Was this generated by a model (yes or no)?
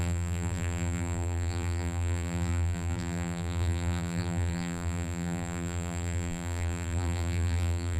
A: yes